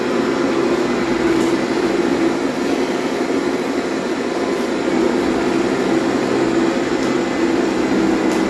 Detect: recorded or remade recorded